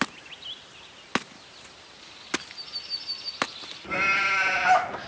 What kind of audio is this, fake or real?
real